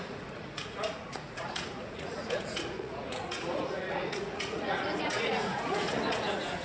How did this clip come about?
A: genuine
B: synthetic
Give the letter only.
B